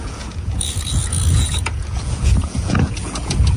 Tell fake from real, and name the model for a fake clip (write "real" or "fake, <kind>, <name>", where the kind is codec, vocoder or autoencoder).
fake, vocoder, Vocos